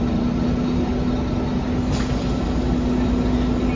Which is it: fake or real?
real